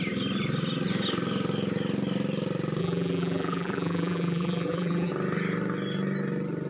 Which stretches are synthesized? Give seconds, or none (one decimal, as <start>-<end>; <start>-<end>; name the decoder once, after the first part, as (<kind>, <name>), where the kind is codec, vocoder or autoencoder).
2.8-5.1 (vocoder, BigVGAN v2)